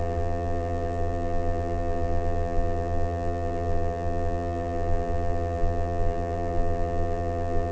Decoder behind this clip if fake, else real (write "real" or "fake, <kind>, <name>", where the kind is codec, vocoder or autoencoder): fake, vocoder, BigVGAN v2